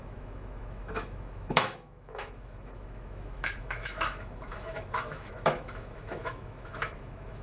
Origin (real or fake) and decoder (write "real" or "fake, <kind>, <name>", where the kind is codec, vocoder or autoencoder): fake, autoencoder, DAC-VAE